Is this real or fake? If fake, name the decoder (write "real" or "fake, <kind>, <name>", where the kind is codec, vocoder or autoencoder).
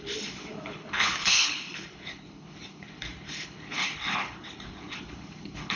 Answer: fake, codec, HILCodec